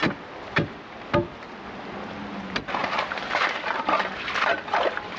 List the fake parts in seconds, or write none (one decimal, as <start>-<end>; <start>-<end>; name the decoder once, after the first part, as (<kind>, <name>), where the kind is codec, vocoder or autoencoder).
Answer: 2.8-4.5 (vocoder, BigVGAN v2)